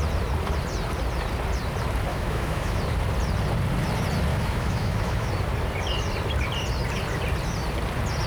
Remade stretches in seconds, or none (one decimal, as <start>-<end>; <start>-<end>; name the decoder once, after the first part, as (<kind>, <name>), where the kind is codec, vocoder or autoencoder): 2.1-2.8 (autoencoder, DAC-VAE); 4.3-5.3